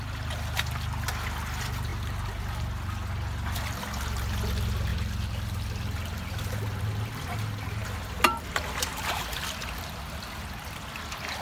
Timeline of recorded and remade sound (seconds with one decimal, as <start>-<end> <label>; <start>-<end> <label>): 0.0-4.9 recorded; 4.9-6.5 remade; 6.5-8.9 recorded; 8.9-10.4 remade; 10.4-11.4 recorded